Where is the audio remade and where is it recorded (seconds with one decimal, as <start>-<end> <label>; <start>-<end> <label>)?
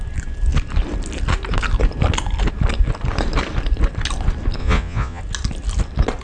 0.0-4.6 recorded; 4.6-5.2 remade; 5.2-6.2 recorded